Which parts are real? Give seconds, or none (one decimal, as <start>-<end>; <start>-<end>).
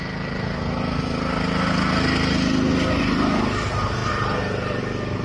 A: 0.0-4.0; 4.8-5.2